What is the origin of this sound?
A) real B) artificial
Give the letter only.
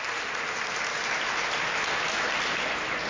A